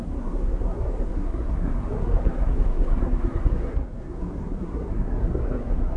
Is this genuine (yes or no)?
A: no